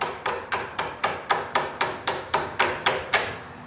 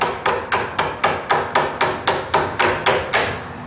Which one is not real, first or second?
first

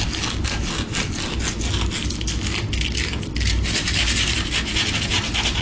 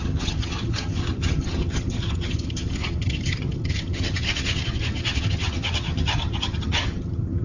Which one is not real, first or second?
second